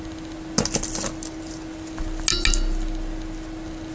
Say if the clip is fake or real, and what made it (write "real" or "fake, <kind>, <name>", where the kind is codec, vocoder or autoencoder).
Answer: real